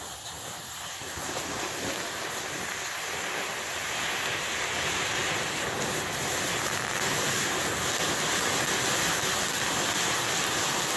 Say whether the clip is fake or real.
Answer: real